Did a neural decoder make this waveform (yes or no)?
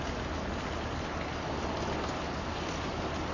no